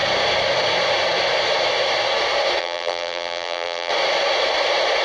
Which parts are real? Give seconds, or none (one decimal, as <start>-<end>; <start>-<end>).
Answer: 0.0-2.6; 3.9-5.0